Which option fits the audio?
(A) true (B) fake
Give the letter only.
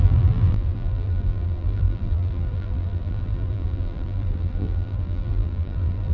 B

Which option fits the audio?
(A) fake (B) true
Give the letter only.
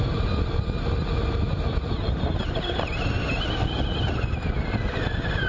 B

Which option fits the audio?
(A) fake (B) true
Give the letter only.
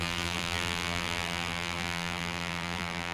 A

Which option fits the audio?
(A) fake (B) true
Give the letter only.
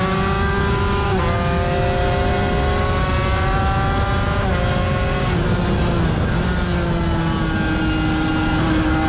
B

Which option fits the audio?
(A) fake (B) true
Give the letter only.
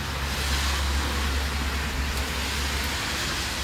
B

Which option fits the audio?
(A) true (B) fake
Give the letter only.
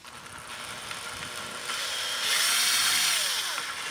A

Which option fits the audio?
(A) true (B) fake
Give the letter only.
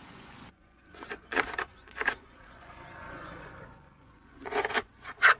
B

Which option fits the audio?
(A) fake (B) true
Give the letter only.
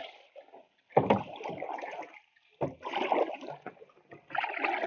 B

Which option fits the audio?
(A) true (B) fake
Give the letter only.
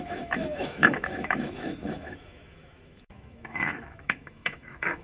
B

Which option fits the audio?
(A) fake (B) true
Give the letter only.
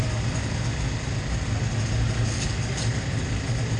B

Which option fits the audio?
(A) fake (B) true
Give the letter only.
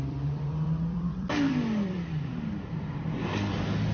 A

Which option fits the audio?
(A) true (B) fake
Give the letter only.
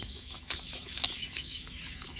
B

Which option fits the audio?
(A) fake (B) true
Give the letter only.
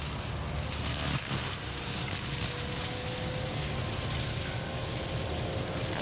B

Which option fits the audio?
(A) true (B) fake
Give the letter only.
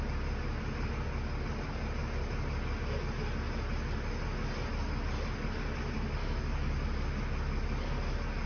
A